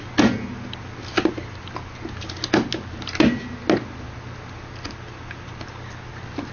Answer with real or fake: real